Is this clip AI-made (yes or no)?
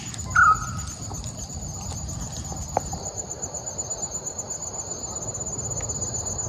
no